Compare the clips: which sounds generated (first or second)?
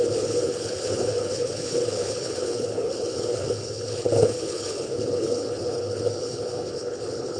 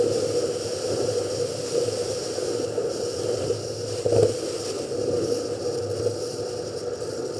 first